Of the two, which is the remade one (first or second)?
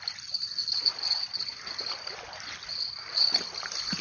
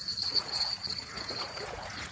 second